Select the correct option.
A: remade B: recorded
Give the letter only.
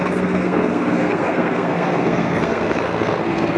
A